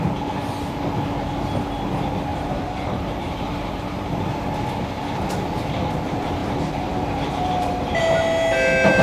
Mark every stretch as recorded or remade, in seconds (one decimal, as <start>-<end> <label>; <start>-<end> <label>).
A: 0.0-2.3 recorded; 2.3-4.1 remade; 4.1-6.4 recorded; 6.4-8.0 remade; 8.0-9.0 recorded